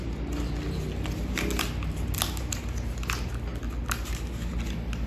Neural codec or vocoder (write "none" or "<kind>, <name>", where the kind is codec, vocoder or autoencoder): none